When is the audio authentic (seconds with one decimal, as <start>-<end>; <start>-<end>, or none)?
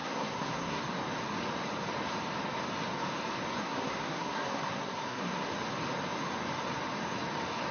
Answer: 0.8-3.6; 5.5-7.7